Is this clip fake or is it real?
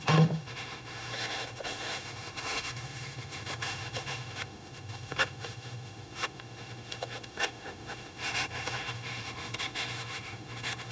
fake